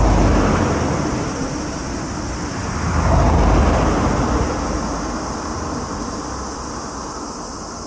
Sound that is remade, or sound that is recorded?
recorded